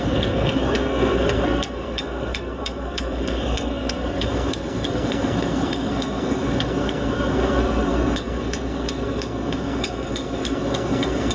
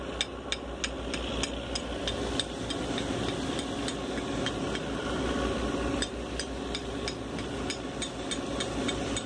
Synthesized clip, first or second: first